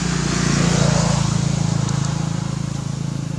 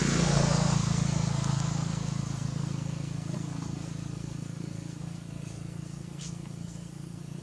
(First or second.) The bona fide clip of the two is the first